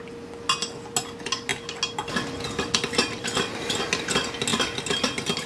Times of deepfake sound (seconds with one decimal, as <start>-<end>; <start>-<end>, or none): 4.5-5.5